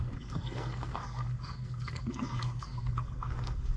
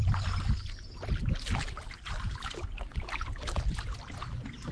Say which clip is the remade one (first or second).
first